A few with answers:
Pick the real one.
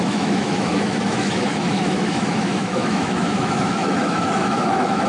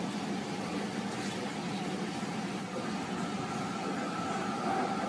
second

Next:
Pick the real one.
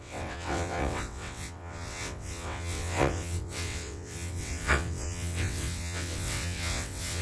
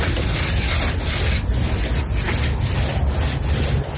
second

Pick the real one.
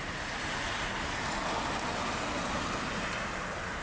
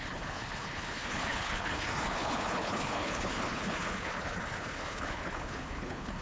first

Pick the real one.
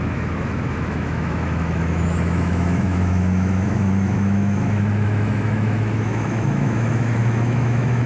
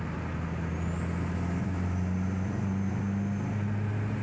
second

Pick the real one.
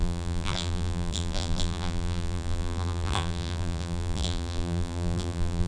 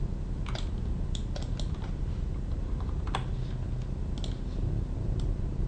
second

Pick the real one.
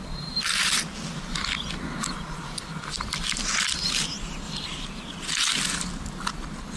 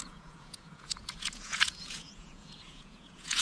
first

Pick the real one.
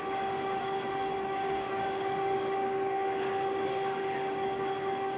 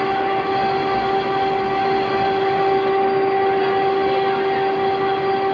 second